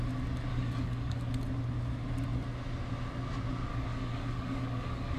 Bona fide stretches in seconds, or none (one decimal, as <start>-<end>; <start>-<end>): 0.0-0.5; 1.3-3.7